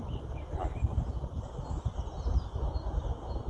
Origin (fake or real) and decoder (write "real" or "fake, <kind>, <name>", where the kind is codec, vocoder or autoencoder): real